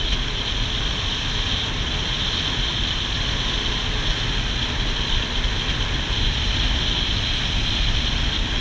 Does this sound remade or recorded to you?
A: recorded